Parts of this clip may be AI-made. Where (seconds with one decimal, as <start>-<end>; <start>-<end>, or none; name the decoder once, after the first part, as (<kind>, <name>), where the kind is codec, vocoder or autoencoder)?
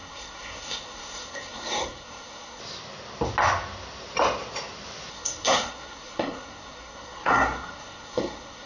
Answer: 0.0-2.6 (codec, SNAC); 5.1-8.7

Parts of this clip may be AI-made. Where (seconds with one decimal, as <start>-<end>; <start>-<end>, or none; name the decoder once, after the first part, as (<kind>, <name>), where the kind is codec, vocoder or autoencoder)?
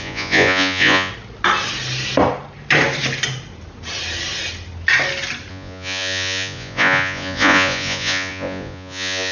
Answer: 0.0-1.1 (vocoder, Vocos); 5.5-9.3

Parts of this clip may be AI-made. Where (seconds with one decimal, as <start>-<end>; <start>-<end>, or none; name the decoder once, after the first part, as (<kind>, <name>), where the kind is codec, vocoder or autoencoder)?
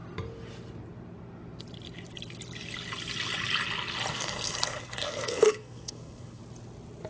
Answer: 4.1-6.4 (codec, SNAC)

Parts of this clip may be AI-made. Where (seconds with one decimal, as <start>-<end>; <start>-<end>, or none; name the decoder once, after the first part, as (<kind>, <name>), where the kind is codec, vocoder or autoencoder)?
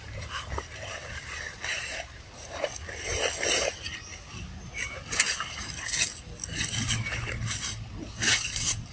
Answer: 0.0-2.7 (vocoder, BigVGAN v2); 6.7-8.9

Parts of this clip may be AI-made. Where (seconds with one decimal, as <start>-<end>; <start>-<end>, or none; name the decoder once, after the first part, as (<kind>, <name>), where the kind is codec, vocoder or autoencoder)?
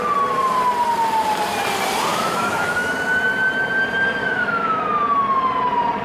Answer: 2.1-2.9 (autoencoder, DAC-VAE); 4.2-4.8